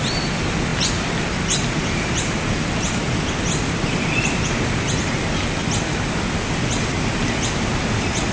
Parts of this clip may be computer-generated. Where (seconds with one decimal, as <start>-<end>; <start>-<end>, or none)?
none

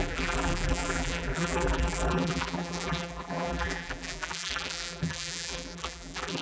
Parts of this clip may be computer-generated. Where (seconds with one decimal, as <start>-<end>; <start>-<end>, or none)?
0.0-6.4